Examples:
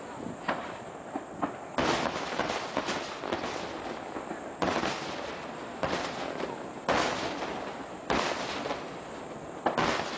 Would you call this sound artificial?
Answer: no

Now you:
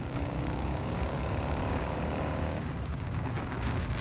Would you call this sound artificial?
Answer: yes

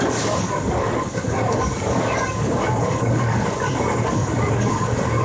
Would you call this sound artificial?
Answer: yes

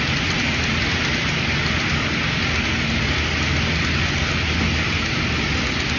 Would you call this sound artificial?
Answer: no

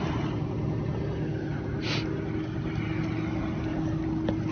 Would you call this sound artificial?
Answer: no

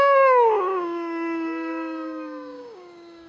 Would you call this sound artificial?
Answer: yes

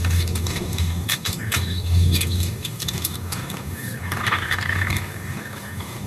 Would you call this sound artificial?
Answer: yes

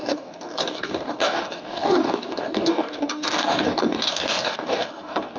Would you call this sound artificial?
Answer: yes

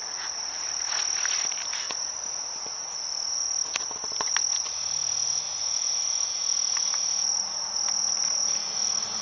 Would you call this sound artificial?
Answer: no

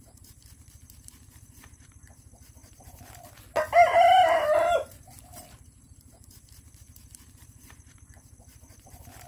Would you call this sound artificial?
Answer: no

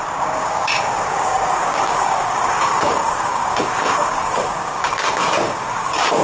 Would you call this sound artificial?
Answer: yes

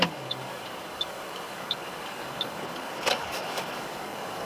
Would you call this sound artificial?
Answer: yes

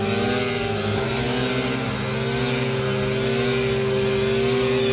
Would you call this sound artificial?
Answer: no